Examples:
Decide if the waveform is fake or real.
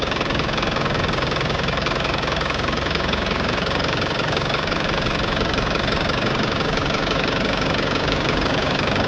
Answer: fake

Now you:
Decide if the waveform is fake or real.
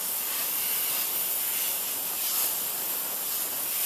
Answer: real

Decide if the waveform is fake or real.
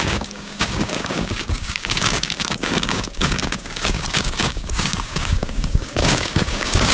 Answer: fake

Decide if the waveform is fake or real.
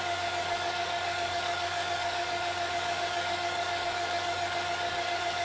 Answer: fake